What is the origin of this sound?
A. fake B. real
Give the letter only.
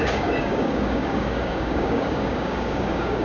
A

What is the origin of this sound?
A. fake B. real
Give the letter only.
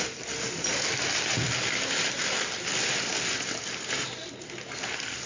B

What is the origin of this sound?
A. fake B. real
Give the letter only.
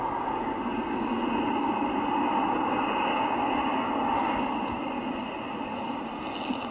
B